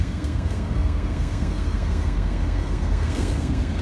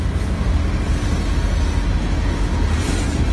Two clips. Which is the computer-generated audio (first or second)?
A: first